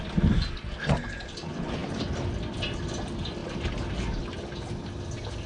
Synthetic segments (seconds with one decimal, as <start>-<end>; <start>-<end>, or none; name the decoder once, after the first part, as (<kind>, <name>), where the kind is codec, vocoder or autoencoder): none